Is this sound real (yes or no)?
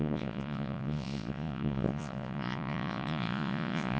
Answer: no